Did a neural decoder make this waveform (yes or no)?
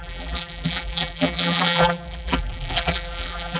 yes